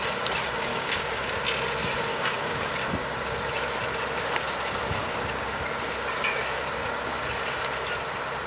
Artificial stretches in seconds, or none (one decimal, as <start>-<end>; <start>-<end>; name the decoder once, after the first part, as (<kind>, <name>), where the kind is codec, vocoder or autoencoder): 0.7-1.3 (codec, DAC); 2.1-2.7; 5.0-5.6

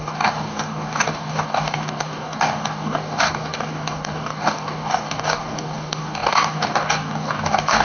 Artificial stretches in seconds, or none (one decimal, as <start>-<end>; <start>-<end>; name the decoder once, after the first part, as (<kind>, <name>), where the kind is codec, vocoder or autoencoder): 0.0-7.8 (codec, DAC)

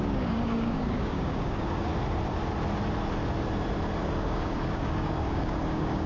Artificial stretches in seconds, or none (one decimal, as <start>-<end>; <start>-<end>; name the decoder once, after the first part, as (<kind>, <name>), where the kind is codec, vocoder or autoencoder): 0.0-1.9 (codec, DAC); 4.0-6.1

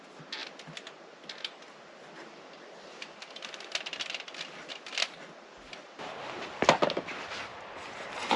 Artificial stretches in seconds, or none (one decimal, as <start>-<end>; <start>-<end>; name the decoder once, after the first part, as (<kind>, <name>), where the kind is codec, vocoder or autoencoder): none

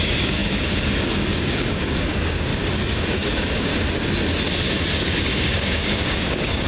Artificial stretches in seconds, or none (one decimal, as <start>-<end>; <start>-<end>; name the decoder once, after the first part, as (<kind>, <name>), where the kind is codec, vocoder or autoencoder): 0.0-2.5 (codec, DAC); 3.0-3.7; 5.0-6.7

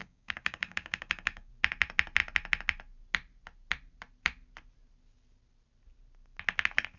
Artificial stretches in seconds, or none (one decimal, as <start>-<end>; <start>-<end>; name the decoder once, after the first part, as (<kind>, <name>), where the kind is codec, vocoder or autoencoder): 0.0-1.5 (codec, DAC)

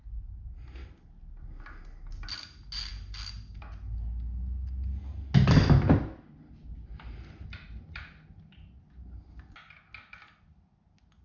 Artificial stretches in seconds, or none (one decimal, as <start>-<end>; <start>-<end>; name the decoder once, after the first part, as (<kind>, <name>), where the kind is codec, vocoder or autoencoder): none

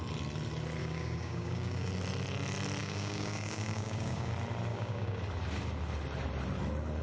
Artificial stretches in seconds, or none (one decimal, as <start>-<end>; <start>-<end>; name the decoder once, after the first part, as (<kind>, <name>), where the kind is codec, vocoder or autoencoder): 0.8-1.9 (codec, DAC); 2.8-4.3; 4.7-5.2